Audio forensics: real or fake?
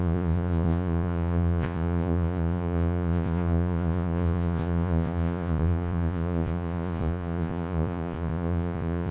fake